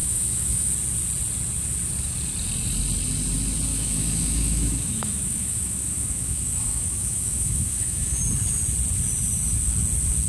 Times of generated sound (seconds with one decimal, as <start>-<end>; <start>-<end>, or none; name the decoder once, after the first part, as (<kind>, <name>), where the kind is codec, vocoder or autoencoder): 0.0-0.7 (autoencoder, DAC-VAE); 3.7-8.2